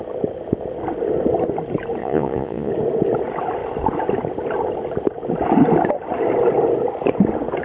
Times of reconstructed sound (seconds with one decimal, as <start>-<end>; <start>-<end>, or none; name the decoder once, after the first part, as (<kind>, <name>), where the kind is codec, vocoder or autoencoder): 2.0-2.7 (vocoder, Vocos)